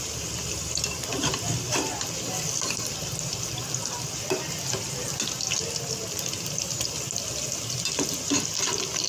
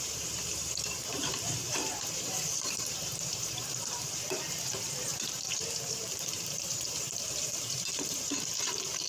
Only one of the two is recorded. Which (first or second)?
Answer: first